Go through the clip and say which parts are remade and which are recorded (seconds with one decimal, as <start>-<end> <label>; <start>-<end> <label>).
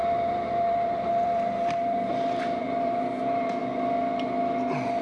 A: 0.0-3.6 remade; 3.6-5.0 recorded